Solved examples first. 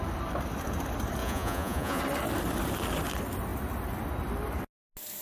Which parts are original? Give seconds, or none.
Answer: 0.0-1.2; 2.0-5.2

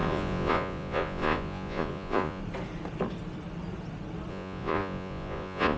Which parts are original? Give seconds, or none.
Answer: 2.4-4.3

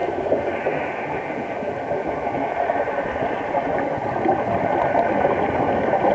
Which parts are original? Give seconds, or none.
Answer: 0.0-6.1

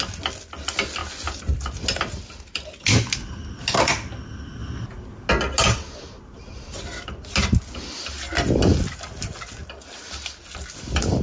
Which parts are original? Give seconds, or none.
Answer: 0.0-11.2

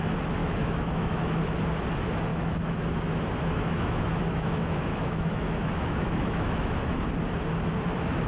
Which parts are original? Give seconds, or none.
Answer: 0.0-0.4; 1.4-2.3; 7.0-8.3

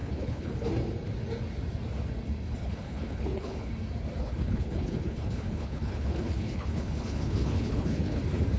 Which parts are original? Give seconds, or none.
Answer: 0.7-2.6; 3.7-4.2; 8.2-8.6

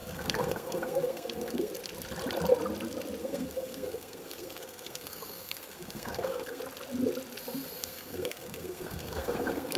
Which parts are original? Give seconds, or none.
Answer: 1.7-3.2; 6.6-7.8

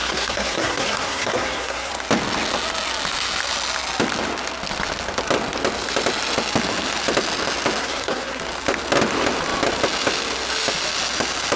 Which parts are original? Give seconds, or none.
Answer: 1.9-7.8; 8.4-11.6